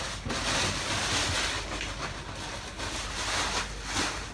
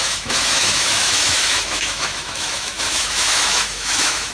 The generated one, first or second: second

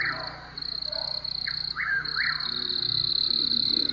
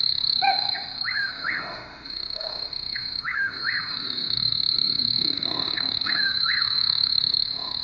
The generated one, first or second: second